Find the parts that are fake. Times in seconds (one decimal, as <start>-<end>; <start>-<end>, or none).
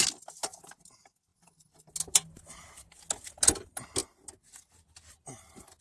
none